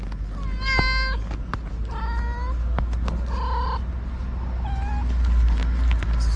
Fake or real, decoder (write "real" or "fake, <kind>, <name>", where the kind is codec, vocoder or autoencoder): real